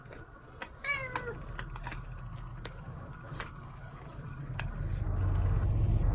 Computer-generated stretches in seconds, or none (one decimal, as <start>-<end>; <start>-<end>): 2.5-5.0